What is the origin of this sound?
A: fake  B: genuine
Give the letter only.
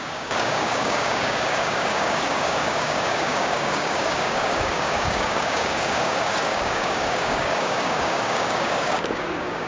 A